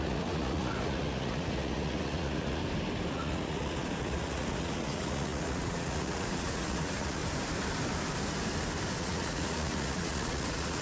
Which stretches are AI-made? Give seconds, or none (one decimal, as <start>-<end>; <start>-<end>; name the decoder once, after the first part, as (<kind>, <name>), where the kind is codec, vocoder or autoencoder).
0.0-2.6 (vocoder, Vocos); 3.1-7.2; 9.0-10.8

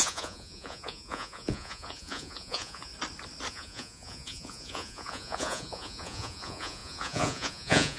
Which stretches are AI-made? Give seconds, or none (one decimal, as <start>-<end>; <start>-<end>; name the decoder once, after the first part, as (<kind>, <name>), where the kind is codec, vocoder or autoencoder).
0.0-2.9 (vocoder, Vocos); 3.5-8.0